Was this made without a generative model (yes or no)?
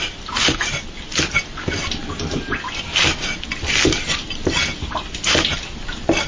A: yes